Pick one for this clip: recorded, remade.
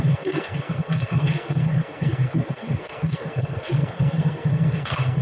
remade